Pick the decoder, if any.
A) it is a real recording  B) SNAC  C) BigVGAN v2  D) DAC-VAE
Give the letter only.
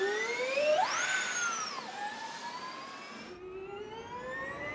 A